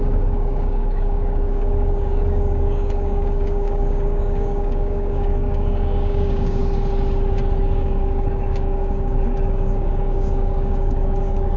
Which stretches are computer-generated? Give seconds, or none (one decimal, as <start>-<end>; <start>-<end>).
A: 0.0-6.6; 7.6-11.6